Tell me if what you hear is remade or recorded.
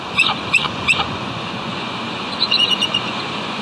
remade